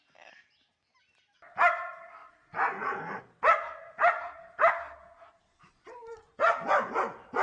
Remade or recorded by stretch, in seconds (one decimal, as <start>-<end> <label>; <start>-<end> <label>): 0.0-7.4 recorded